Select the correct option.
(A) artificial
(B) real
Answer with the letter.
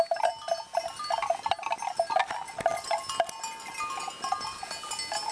B